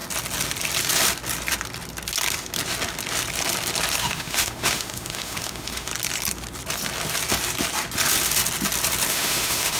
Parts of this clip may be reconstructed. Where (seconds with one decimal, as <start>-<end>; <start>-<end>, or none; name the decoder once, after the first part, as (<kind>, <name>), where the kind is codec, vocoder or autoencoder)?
4.0-5.9 (autoencoder, DAC-VAE); 9.1-9.8